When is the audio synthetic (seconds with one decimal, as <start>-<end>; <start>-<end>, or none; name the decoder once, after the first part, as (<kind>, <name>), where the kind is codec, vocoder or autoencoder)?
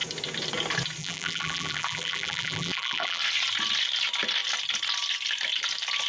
1.0-3.2 (vocoder, BigVGAN v2)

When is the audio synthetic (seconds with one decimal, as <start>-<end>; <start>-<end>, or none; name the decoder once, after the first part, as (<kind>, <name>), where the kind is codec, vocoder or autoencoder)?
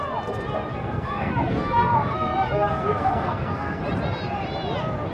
0.7-3.8 (codec, SNAC)